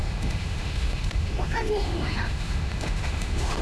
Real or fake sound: fake